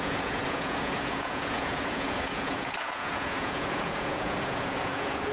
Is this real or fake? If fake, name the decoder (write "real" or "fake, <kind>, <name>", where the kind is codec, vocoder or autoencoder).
fake, vocoder, Vocos